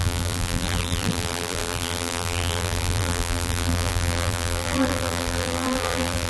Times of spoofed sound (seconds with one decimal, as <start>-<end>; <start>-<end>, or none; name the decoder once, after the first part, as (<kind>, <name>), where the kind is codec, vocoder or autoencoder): 0.0-6.3 (vocoder, BigVGAN v2)